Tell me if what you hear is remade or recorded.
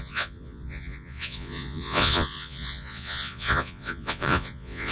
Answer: remade